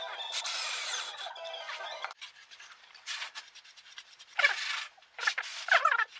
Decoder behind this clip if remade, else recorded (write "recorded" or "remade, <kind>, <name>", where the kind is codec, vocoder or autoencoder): remade, vocoder, BigVGAN v2